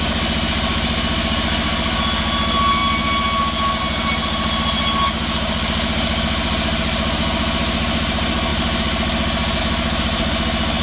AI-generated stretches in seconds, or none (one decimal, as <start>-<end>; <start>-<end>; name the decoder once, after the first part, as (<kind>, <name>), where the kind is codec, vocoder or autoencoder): none